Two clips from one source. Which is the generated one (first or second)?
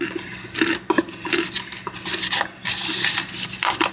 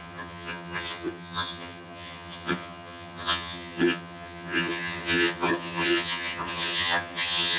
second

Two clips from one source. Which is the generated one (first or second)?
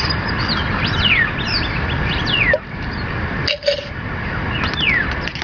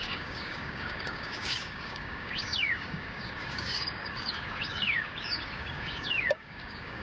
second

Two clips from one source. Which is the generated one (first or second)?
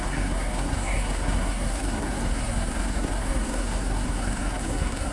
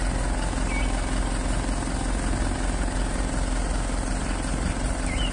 first